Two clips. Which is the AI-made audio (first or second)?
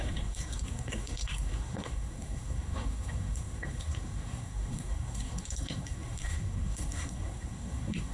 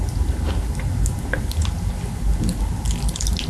first